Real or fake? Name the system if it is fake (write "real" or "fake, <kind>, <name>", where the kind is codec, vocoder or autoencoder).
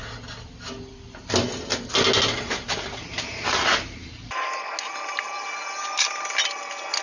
real